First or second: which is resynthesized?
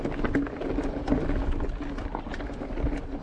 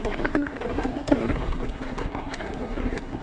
second